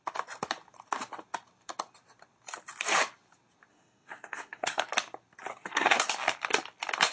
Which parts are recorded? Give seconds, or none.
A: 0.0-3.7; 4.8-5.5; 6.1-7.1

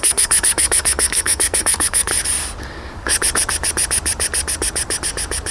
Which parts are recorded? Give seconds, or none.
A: 2.1-5.5